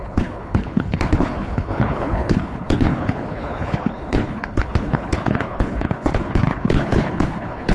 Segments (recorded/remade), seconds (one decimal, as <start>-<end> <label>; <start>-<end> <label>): 0.0-7.7 remade